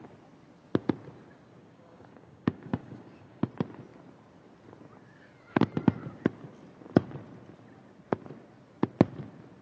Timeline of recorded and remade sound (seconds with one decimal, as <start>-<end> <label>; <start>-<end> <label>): 0.0-1.6 recorded; 1.6-3.5 remade; 3.5-9.6 recorded

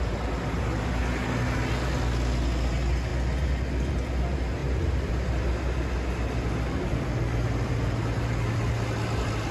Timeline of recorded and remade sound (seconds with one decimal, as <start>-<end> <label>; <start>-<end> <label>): 0.0-9.5 recorded

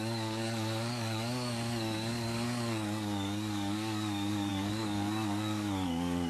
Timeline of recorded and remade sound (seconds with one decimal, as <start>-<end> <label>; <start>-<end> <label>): 0.0-6.3 remade

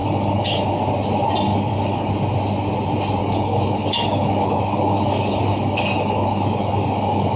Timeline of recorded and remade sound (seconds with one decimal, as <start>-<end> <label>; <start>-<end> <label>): 0.0-0.6 remade; 0.6-1.5 recorded; 1.5-2.1 remade; 2.1-3.2 recorded; 3.2-7.4 remade

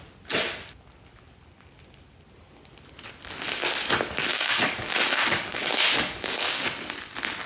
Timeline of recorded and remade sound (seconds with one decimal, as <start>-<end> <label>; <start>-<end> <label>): 0.0-4.3 recorded; 4.3-6.7 remade; 6.7-7.5 recorded